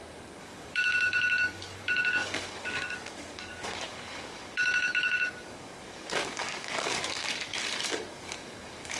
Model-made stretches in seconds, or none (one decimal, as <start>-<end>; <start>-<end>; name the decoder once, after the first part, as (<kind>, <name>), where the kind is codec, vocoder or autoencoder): 0.0-9.0 (codec, DAC)